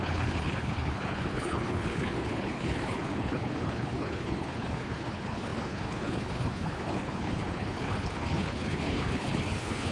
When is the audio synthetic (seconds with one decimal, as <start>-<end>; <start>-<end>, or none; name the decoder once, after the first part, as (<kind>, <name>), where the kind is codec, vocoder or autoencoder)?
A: 0.0-9.9 (codec, HILCodec)